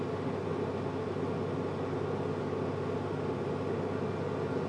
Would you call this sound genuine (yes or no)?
yes